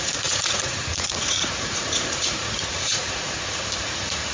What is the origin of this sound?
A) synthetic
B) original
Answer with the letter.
A